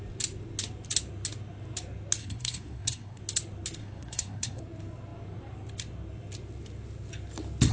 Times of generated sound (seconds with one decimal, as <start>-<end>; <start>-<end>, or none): 2.2-3.2; 3.8-4.6